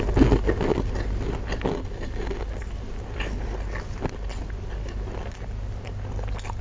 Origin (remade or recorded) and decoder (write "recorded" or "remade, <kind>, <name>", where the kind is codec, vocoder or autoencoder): recorded